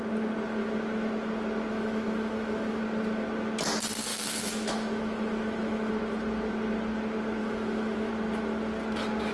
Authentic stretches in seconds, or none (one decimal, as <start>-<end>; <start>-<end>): 0.0-1.7; 2.8-4.1; 5.9-7.4; 8.1-9.3